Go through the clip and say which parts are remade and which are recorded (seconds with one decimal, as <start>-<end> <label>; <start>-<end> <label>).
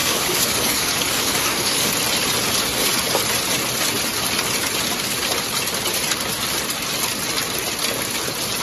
0.0-1.9 remade; 1.9-8.6 recorded